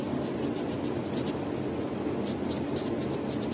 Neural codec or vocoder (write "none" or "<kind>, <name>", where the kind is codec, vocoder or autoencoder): vocoder, BigVGAN v2